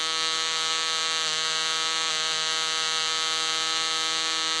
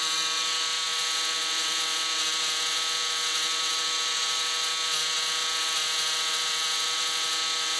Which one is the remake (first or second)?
second